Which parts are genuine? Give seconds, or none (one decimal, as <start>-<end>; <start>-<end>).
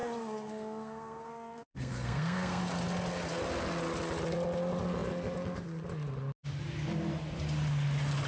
2.6-8.3